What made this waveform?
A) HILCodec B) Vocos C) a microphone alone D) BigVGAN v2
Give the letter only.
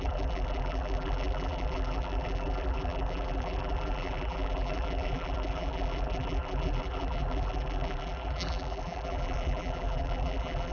D